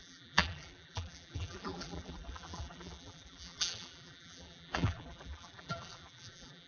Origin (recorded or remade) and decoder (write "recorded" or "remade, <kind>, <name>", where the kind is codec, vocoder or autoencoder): remade, vocoder, BigVGAN v2